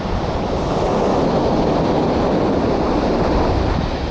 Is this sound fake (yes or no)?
no